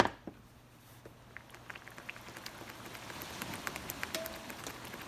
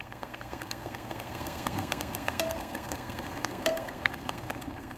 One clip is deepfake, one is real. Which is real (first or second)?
first